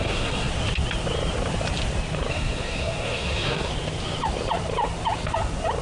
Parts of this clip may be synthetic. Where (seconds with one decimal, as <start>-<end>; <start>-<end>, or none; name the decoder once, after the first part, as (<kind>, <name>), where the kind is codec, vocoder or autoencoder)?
0.0-0.5 (codec, SNAC); 2.3-3.7

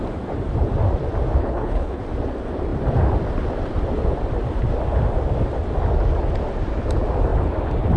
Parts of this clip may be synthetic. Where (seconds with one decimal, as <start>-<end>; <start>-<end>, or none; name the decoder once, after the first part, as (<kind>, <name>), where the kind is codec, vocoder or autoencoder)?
1.4-2.0 (codec, HILCodec)

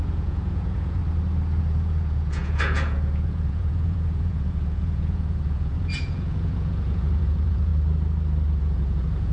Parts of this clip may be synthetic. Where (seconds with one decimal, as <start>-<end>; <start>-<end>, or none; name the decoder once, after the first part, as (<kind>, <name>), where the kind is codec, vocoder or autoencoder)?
0.0-1.0 (vocoder, Vocos); 1.6-7.7; 8.6-9.3

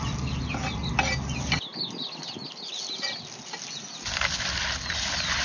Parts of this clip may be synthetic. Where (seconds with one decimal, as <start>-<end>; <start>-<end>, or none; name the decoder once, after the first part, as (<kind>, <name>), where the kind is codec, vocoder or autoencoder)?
none

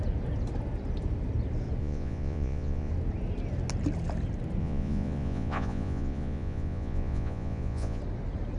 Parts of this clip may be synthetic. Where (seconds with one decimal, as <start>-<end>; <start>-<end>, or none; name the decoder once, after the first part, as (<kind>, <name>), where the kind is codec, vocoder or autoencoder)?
1.8-2.9 (vocoder, Vocos); 4.6-8.0